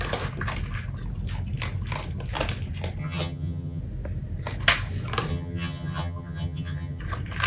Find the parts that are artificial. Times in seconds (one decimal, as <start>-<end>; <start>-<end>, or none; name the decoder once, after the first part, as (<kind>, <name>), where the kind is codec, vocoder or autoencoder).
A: 3.0-3.8 (vocoder, HiFi-GAN); 5.3-7.0